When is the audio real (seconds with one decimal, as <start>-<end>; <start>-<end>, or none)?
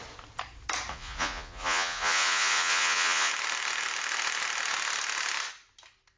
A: 0.0-0.9; 3.3-6.2